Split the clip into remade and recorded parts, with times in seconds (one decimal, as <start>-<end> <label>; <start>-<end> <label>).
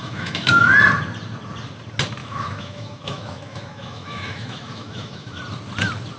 0.0-0.6 remade; 0.6-2.2 recorded; 2.2-5.4 remade; 5.4-6.2 recorded